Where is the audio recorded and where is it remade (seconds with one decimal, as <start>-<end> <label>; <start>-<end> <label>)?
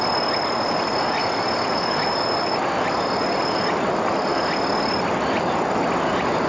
0.0-6.5 recorded